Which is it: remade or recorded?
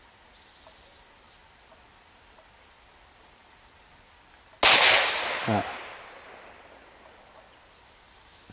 recorded